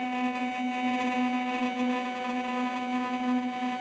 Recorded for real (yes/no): no